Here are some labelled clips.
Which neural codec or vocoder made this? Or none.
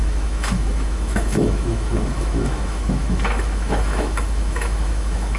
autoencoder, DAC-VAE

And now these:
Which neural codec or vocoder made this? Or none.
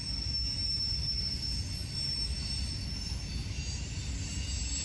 none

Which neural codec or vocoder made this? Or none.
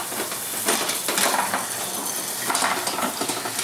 vocoder, BigVGAN v2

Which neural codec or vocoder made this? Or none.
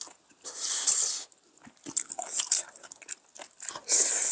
none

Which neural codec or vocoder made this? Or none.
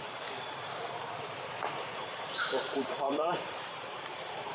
vocoder, BigVGAN v2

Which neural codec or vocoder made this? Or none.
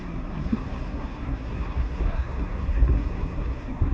codec, SNAC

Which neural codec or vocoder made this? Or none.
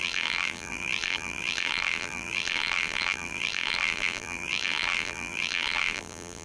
vocoder, BigVGAN v2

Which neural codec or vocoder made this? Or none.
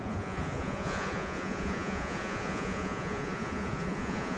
vocoder, Vocos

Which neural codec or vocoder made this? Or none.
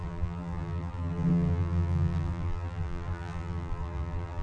vocoder, BigVGAN v2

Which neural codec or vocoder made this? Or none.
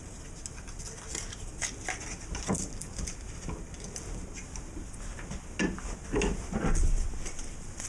none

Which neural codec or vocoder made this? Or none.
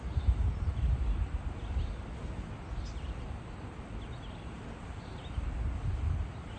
none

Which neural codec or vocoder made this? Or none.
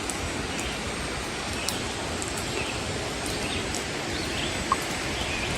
none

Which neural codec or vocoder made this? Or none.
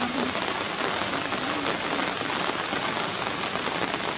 none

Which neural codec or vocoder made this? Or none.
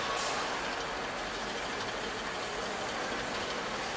none